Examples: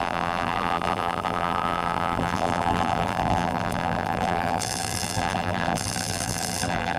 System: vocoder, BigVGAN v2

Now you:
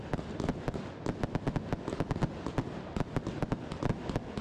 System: none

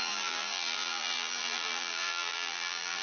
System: vocoder, BigVGAN v2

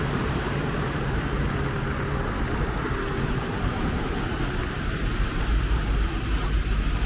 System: vocoder, BigVGAN v2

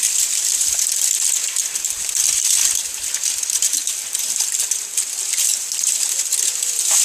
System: none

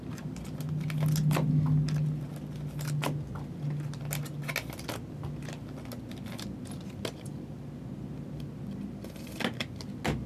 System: none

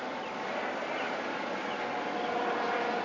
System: none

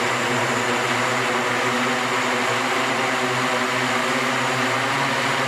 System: none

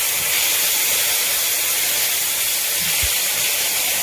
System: vocoder, BigVGAN v2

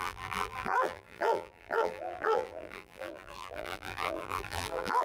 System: vocoder, BigVGAN v2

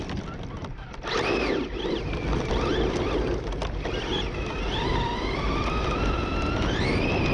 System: none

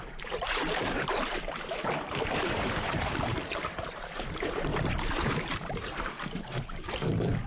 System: vocoder, BigVGAN v2